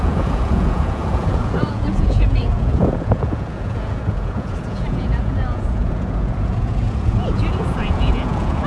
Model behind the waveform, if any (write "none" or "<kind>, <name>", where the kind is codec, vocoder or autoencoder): vocoder, Vocos